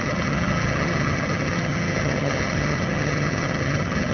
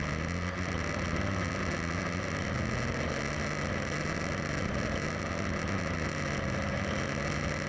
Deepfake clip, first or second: first